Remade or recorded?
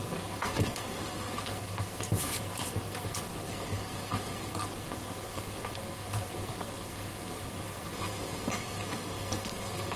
remade